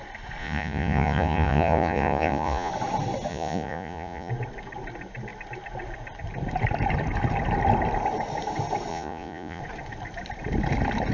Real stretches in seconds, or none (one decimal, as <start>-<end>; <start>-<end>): 0.0-0.4; 2.7-3.3; 4.3-8.9; 9.6-11.1